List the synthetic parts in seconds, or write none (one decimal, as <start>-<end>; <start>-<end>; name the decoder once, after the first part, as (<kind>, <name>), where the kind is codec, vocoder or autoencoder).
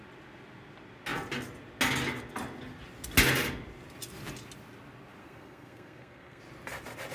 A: 5.2-6.4 (codec, SNAC)